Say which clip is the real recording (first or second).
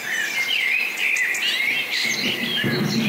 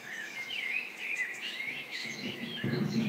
first